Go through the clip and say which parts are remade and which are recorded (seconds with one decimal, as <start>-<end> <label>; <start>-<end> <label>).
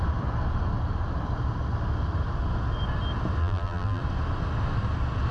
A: 0.0-3.4 recorded; 3.4-4.0 remade; 4.0-5.3 recorded